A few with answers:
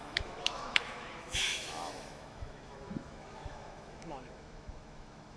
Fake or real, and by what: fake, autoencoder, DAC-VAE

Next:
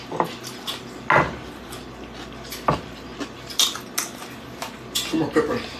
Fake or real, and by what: real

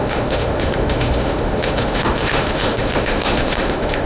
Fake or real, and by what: fake, autoencoder, DAC-VAE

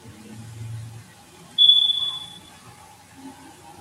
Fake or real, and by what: real